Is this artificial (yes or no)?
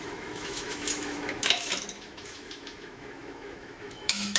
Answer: yes